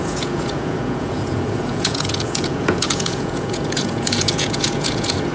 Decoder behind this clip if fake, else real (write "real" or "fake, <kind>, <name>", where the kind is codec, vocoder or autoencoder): fake, vocoder, Vocos